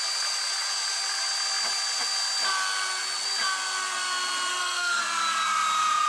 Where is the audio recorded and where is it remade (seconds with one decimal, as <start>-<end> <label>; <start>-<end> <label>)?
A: 0.0-4.5 recorded; 4.5-5.0 remade; 5.0-6.1 recorded